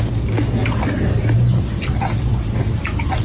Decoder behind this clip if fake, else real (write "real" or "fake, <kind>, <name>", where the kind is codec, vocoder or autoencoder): real